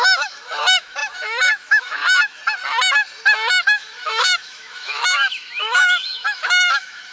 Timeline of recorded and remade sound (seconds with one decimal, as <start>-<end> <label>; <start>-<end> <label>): 0.0-2.4 remade; 2.4-3.5 recorded; 3.5-7.1 remade